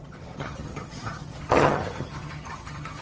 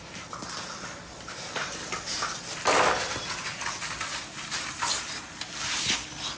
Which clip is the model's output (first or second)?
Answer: first